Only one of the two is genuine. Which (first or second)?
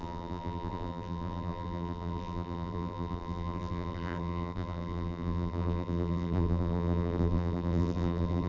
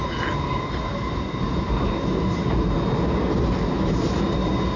second